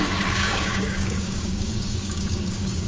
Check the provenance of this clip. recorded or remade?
remade